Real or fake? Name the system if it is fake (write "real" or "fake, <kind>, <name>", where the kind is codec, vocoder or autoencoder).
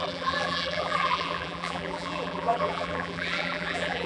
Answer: fake, vocoder, BigVGAN v2